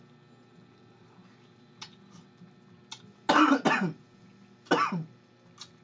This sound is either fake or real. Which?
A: real